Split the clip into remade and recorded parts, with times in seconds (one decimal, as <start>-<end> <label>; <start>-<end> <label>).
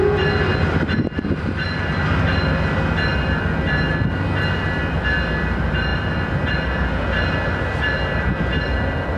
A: 0.0-9.2 recorded